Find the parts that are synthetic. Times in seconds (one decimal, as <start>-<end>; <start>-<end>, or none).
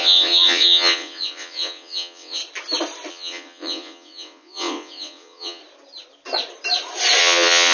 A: 0.0-2.4; 3.1-5.6; 7.2-7.7